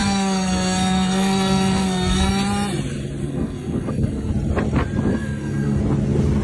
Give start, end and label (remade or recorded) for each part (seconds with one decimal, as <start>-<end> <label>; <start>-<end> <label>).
0.0-2.3 remade; 2.3-3.2 recorded; 3.2-4.3 remade; 4.3-5.1 recorded; 5.1-5.8 remade; 5.8-6.4 recorded